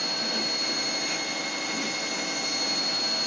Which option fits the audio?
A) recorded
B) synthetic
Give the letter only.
A